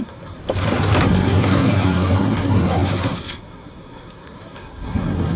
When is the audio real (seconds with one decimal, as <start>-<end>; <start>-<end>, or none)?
0.4-1.0